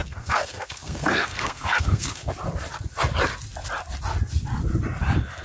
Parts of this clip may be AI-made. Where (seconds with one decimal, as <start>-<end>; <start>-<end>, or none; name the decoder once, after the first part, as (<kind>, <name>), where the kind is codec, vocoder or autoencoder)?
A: 0.0-2.3 (codec, SNAC)